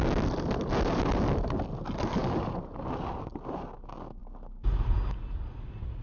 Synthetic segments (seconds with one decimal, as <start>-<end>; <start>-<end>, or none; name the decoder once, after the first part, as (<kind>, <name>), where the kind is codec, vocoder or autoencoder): none